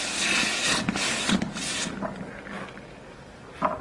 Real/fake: real